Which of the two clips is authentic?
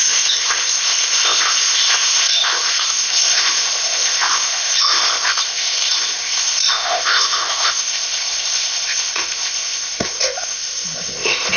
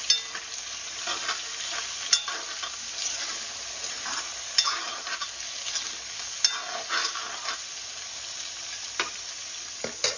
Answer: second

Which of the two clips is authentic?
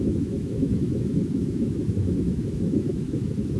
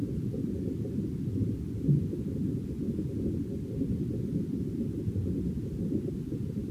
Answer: second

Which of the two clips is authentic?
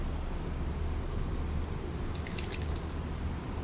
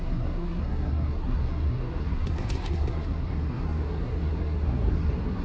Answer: first